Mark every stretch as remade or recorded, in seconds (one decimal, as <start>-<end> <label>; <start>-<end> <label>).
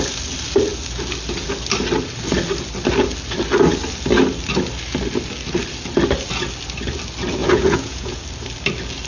0.0-7.4 recorded; 7.4-8.2 remade; 8.2-9.1 recorded